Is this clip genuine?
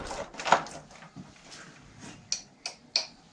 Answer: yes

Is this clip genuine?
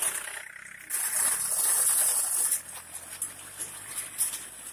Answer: yes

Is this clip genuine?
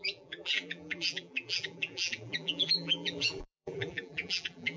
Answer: no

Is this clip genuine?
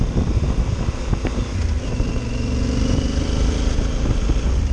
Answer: yes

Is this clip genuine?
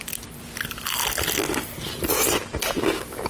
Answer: yes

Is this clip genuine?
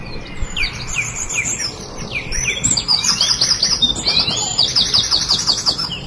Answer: no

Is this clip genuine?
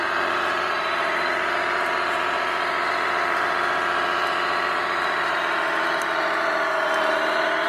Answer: no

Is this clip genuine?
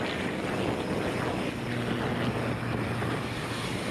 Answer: yes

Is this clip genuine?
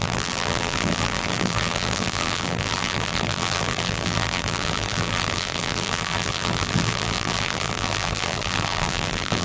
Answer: no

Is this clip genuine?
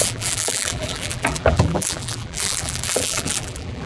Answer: no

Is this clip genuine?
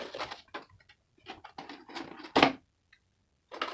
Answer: yes